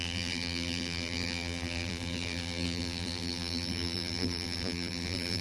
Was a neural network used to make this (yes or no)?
yes